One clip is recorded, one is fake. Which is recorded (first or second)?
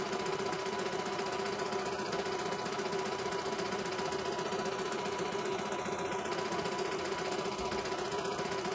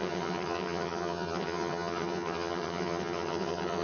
first